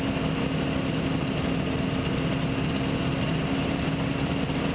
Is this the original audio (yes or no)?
yes